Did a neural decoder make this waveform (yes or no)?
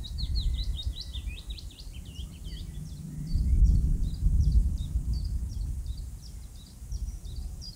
yes